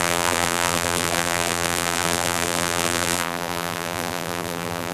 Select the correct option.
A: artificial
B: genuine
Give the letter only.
A